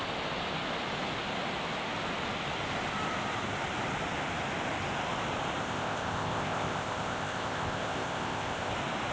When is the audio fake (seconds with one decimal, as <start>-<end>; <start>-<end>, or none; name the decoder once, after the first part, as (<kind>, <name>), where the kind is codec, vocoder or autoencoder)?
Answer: 5.6-8.7 (codec, ZipCodec)